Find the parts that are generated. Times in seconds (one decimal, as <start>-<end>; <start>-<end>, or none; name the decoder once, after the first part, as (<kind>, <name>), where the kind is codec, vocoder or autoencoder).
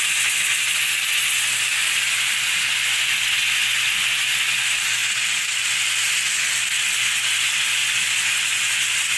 1.8-3.0 (vocoder, BigVGAN v2)